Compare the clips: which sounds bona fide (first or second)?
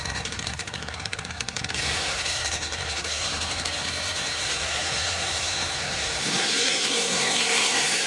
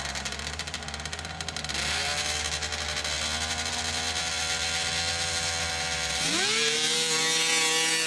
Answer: second